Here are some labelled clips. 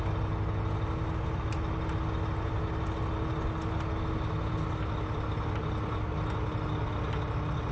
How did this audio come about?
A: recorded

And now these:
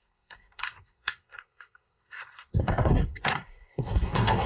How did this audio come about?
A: remade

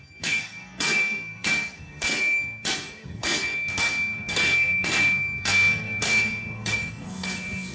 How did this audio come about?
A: remade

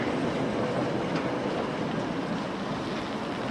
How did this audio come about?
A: recorded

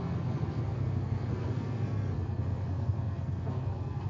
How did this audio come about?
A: remade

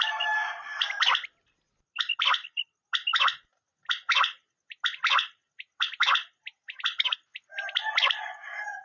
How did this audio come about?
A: recorded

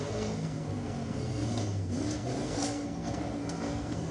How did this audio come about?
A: remade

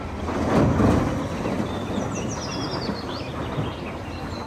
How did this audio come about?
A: recorded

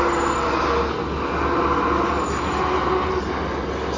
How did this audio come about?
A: recorded